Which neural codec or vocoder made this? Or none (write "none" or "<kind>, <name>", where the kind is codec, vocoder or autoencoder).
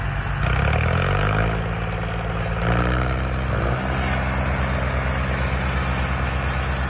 none